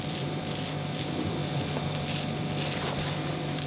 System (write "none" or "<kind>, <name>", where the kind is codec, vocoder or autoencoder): vocoder, BigVGAN v2